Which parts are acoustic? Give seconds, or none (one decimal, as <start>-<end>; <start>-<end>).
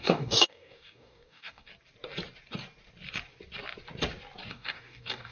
1.7-4.5